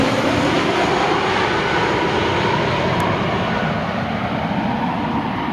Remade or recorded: recorded